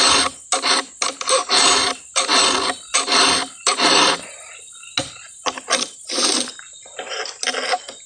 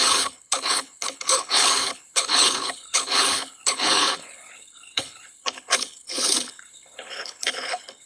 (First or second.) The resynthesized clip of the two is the second